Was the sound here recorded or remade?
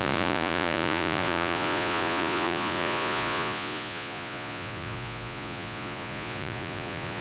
remade